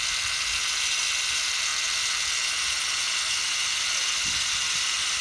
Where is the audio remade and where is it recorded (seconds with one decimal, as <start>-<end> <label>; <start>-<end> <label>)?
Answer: 0.0-5.2 recorded